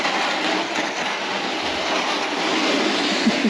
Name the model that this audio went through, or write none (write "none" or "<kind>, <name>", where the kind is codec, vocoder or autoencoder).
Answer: none